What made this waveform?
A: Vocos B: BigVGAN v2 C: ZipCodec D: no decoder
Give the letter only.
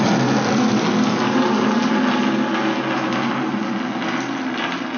D